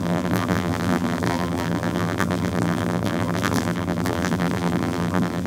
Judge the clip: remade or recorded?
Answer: remade